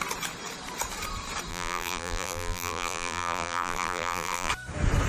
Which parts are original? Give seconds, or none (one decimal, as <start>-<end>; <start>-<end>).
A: 0.0-1.5; 4.5-5.1